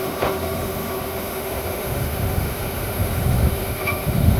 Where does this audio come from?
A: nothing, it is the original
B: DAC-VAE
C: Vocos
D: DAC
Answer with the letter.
B